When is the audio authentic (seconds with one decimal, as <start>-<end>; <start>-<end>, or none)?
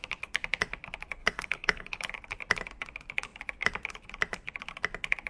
0.0-1.2; 2.1-5.3